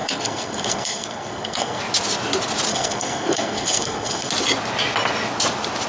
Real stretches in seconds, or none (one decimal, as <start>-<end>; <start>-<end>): 1.8-2.7; 4.3-5.9